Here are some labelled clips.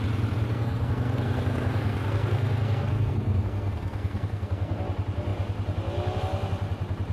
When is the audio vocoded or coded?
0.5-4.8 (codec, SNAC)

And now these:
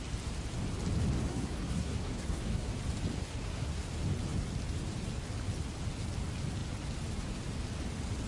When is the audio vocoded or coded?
1.3-2.7 (codec, SNAC); 3.2-3.9